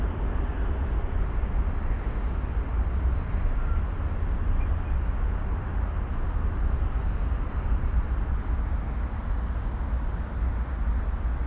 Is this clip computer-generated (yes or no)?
no